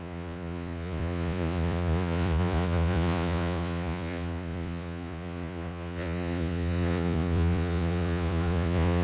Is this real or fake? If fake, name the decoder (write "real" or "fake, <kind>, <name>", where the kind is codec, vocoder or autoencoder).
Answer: fake, vocoder, Vocos